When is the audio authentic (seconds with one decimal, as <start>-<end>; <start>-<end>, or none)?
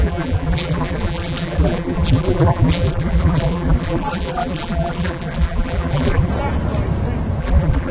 6.3-7.4